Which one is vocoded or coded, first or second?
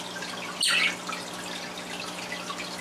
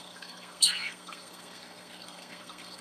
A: second